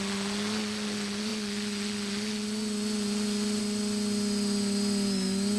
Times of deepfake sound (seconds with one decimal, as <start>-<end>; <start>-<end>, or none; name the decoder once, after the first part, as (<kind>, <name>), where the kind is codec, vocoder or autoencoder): none